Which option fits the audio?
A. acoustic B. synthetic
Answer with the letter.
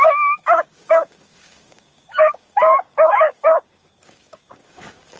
B